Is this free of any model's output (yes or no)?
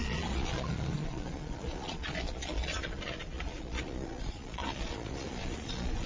no